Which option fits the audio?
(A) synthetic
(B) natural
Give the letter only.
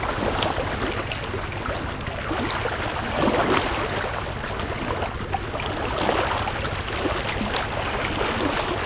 B